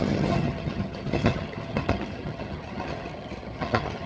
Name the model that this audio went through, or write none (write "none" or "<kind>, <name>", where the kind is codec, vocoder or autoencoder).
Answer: vocoder, HiFi-GAN